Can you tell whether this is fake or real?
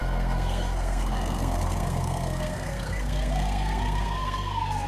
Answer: fake